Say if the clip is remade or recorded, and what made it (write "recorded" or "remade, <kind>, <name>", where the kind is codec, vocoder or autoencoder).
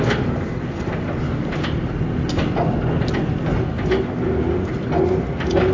recorded